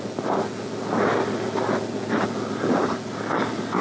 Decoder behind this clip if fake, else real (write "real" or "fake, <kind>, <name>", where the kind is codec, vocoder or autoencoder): real